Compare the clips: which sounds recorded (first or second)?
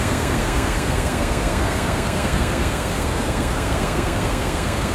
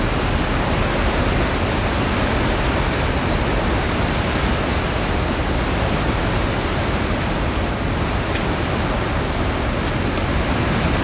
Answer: second